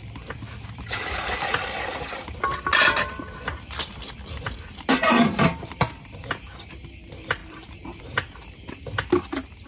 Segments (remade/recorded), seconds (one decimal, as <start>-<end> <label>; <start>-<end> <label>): 0.0-1.2 remade; 1.2-7.4 recorded; 7.4-8.0 remade; 8.0-9.7 recorded